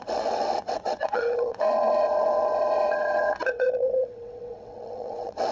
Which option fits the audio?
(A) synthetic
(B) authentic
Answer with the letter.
A